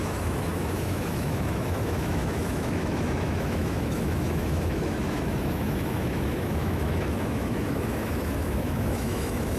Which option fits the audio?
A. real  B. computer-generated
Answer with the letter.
B